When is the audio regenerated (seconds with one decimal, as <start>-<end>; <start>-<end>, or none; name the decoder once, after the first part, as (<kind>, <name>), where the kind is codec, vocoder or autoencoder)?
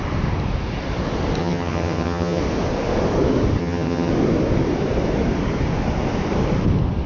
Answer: 1.4-2.4 (vocoder, HiFi-GAN); 3.6-4.1